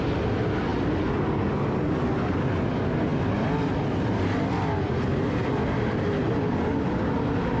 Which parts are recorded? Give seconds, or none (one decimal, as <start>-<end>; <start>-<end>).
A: 0.0-7.6